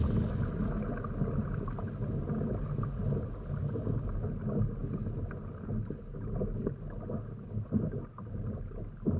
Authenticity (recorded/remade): recorded